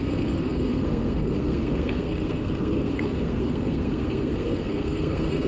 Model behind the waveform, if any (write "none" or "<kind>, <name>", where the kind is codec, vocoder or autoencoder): codec, SNAC